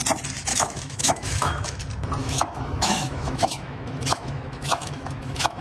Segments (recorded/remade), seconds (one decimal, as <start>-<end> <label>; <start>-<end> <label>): 0.0-0.5 recorded; 0.5-1.8 remade; 1.8-2.2 recorded; 2.2-5.6 remade